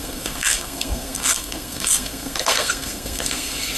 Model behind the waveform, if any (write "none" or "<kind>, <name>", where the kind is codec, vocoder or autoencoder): codec, SNAC